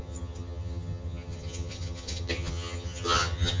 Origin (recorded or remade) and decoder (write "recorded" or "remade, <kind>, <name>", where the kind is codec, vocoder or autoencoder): remade, vocoder, HiFi-GAN